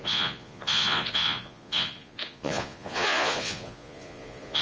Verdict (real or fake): fake